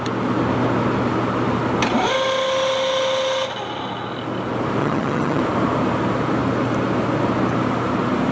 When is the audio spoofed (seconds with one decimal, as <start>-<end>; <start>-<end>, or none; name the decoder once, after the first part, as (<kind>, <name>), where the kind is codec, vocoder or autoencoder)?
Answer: 4.8-5.4 (vocoder, HiFi-GAN)

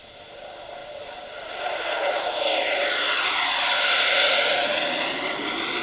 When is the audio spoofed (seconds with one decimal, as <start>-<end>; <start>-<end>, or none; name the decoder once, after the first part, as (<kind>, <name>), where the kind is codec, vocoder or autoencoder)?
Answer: none

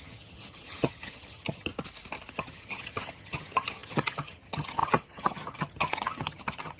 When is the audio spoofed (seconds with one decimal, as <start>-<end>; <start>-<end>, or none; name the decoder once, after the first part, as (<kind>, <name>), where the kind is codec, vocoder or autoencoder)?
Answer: 0.0-1.7 (vocoder, HiFi-GAN); 2.3-6.8

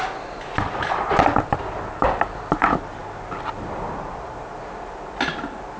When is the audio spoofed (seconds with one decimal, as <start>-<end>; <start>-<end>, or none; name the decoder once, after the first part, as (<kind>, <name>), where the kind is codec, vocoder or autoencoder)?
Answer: none

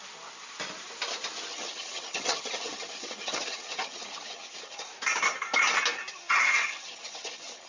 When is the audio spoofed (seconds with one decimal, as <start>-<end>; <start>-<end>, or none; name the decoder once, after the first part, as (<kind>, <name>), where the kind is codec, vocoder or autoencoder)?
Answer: 1.5-4.9 (vocoder, HiFi-GAN); 6.1-7.7

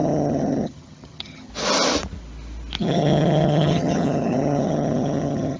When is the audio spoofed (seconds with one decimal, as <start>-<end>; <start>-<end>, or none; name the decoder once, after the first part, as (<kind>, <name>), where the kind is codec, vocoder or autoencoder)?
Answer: 0.0-1.5 (vocoder, HiFi-GAN); 2.8-5.6

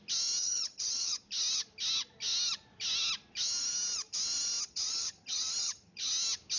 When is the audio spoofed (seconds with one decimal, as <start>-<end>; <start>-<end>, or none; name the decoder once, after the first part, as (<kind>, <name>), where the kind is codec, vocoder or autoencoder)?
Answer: 0.4-1.2 (vocoder, HiFi-GAN); 4.6-6.1